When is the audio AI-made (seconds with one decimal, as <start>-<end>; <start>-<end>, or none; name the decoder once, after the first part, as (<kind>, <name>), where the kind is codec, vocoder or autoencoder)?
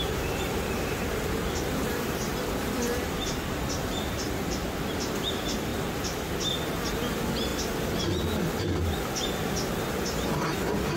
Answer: 0.0-5.7 (vocoder, BigVGAN v2); 6.9-7.5; 9.4-11.0